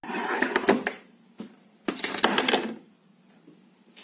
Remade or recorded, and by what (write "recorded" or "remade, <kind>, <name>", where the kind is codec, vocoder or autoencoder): recorded